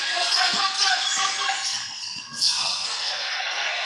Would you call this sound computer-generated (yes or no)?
yes